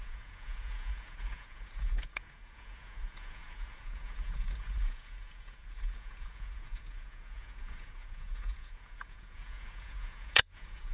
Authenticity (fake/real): fake